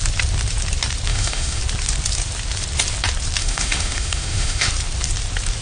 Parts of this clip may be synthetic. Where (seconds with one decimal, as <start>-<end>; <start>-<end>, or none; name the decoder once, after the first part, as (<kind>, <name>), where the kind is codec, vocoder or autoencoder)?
1.1-1.6 (autoencoder, DAC-VAE); 3.4-4.7